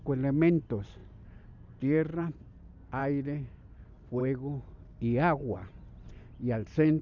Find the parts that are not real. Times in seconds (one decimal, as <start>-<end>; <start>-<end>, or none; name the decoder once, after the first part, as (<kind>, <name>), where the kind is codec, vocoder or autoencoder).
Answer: 1.0-2.4 (vocoder, BigVGAN v2)